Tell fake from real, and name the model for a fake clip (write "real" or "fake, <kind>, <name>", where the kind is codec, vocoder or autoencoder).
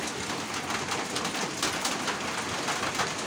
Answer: real